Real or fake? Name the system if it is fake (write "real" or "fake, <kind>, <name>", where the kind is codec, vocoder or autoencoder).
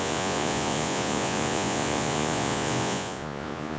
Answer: fake, vocoder, Vocos